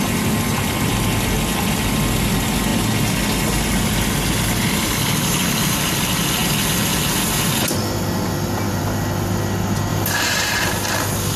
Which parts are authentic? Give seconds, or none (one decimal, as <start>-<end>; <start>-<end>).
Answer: 0.0-9.9; 10.7-11.4